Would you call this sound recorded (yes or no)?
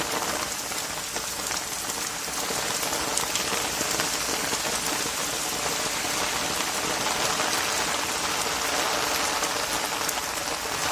yes